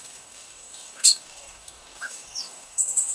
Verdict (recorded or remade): remade